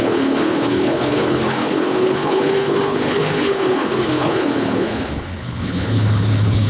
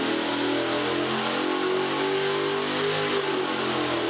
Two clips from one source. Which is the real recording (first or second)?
second